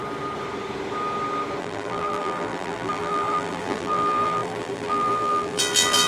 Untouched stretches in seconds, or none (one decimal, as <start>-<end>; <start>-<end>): 0.0-1.6